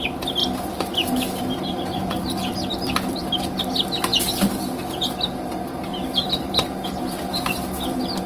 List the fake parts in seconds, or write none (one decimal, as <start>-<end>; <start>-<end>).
0.4-3.6; 5.9-7.5